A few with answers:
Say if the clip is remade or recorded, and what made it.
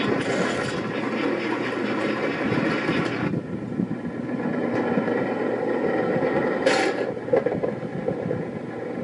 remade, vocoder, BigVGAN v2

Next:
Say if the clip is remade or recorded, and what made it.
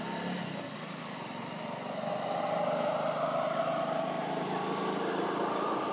recorded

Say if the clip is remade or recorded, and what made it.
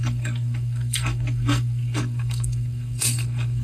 remade, codec, SNAC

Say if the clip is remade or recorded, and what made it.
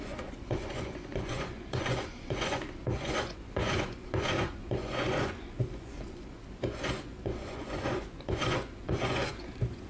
remade, vocoder, Vocos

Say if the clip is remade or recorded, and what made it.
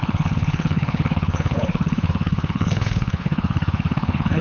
remade, codec, HILCodec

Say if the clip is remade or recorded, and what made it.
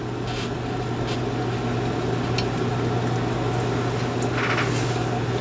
recorded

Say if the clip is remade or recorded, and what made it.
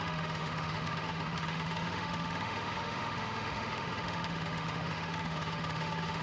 remade, autoencoder, DAC-VAE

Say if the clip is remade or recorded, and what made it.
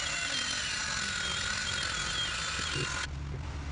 recorded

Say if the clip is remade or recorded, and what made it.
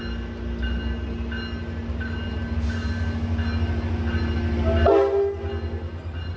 recorded